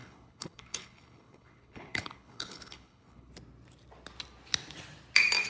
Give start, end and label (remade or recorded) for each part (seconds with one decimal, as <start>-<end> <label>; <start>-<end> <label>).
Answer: 0.0-3.3 remade; 3.3-5.5 recorded